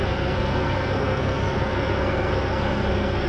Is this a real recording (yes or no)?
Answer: no